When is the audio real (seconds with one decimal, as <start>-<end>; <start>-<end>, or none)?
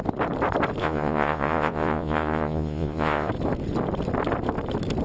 0.0-0.8; 3.3-5.0